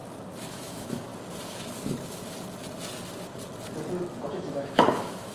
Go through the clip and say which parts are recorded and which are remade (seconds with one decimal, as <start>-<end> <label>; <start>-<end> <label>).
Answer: 0.0-0.5 recorded; 0.5-1.1 remade; 1.1-4.3 recorded; 4.3-5.3 remade